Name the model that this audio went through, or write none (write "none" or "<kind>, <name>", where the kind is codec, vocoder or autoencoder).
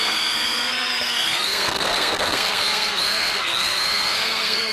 codec, SNAC